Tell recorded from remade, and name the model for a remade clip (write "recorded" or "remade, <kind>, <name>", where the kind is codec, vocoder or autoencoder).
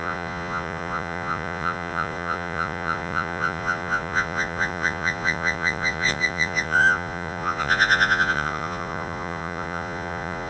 remade, vocoder, Vocos